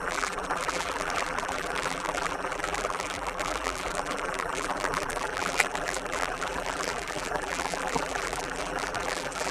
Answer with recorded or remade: remade